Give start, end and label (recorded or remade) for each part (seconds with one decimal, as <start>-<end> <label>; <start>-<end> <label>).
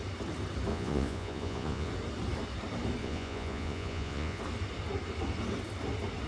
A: 0.0-0.7 recorded; 0.7-1.9 remade; 1.9-3.0 recorded; 3.0-4.4 remade; 4.4-6.3 recorded